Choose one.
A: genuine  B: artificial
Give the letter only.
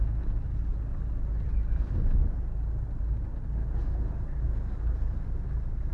A